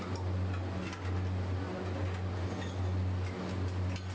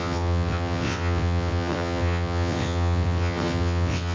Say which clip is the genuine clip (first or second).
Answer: first